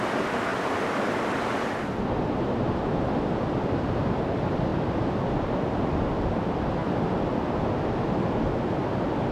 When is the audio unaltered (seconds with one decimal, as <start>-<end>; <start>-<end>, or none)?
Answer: 0.0-9.3